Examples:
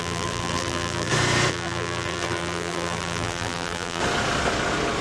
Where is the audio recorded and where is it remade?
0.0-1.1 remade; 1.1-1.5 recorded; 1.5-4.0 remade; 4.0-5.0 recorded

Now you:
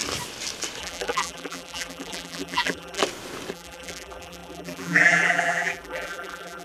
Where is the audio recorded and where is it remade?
0.0-0.8 recorded; 0.8-3.0 remade; 3.0-3.5 recorded; 3.5-6.6 remade

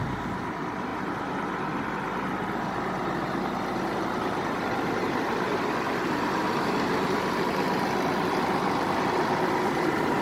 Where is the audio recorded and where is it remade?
0.0-0.9 recorded; 0.9-1.9 remade; 1.9-10.2 recorded

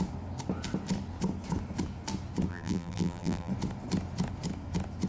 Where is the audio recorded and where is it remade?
0.0-2.5 recorded; 2.5-3.5 remade; 3.5-5.1 recorded

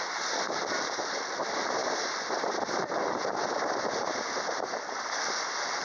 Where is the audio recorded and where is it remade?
0.0-5.8 recorded

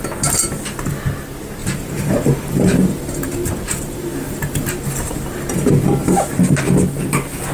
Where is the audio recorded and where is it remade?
0.0-1.6 recorded; 1.6-5.7 remade; 5.7-7.5 recorded